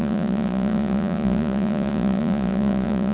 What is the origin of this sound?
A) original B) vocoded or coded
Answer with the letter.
B